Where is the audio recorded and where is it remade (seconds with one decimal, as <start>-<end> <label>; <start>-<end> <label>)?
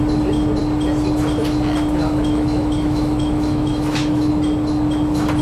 0.0-2.0 recorded; 2.0-4.3 remade; 4.3-5.4 recorded